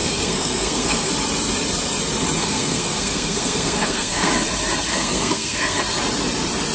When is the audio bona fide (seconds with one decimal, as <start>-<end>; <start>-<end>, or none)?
1.1-2.4; 4.3-4.9; 5.8-6.7